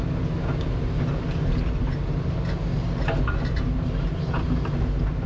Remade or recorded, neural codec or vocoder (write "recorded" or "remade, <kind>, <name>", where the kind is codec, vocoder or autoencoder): recorded